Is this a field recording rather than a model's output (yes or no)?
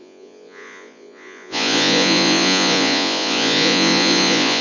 no